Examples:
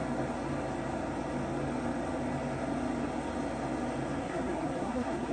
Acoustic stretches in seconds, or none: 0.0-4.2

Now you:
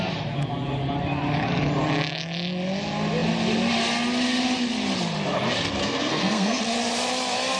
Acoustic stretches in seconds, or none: 0.0-5.8; 6.6-7.6

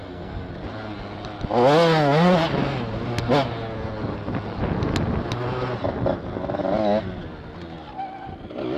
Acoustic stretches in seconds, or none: 0.5-8.8

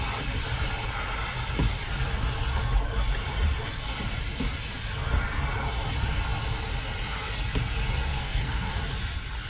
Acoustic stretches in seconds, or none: 0.0-8.1; 8.8-9.5

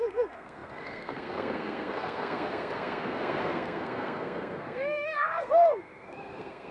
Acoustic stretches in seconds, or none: none

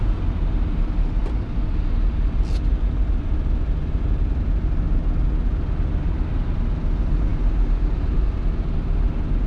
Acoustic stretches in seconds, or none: 0.0-9.5

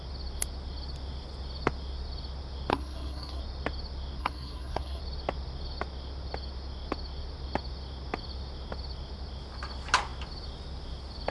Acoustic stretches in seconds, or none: 0.0-2.7; 3.4-4.2; 5.0-11.3